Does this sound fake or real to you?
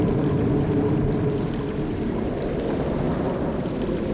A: real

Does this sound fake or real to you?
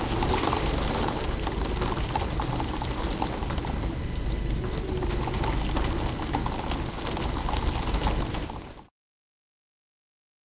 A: real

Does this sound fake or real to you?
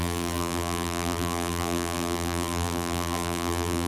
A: fake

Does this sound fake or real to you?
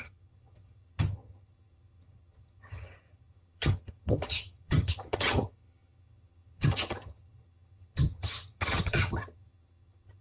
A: fake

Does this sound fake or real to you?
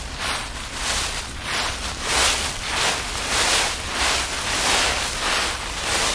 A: real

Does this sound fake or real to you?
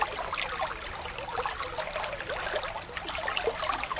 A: real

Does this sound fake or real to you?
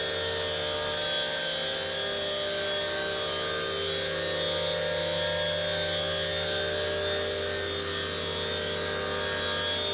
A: real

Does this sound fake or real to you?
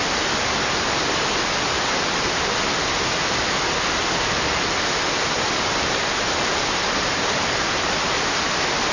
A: real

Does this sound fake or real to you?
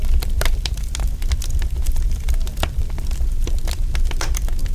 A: real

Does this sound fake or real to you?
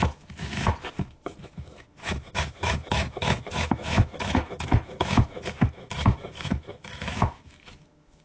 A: fake